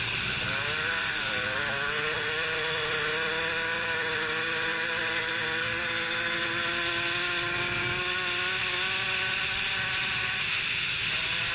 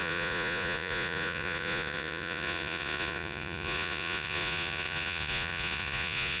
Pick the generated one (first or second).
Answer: second